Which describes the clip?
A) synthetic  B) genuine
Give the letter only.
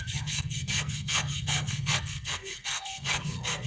A